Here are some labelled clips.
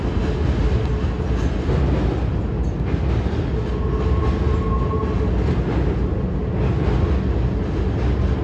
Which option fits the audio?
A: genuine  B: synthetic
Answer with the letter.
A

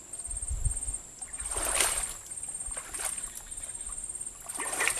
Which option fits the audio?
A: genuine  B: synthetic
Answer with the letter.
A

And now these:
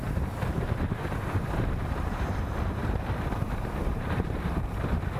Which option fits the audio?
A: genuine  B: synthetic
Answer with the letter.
B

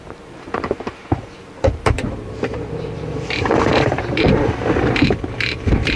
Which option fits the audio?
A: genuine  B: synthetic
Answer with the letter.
B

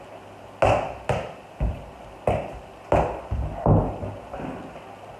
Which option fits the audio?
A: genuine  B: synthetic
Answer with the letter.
A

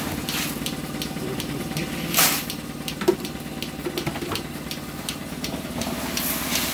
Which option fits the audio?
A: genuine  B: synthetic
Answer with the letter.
A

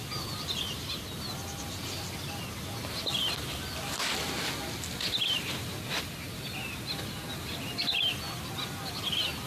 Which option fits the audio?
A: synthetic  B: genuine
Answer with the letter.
B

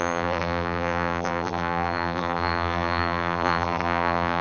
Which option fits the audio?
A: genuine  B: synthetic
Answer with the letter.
B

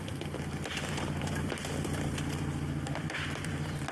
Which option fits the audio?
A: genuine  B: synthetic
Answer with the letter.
B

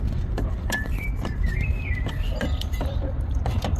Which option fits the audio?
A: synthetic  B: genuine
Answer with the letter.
A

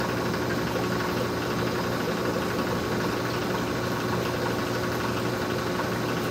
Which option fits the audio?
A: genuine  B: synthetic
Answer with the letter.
A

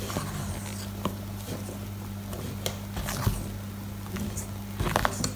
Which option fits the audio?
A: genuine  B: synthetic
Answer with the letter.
A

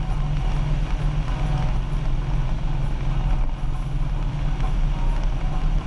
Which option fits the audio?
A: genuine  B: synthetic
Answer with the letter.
A